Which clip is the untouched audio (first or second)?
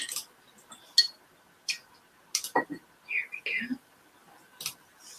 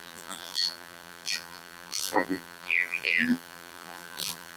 first